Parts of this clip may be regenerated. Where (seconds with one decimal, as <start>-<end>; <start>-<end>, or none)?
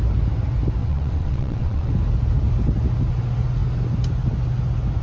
0.8-1.9